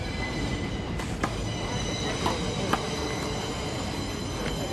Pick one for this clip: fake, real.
real